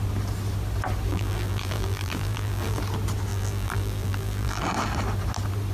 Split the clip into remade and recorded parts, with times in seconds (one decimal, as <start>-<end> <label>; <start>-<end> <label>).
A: 0.0-1.1 recorded; 1.1-2.8 remade; 2.8-3.3 recorded; 3.3-4.6 remade; 4.6-5.7 recorded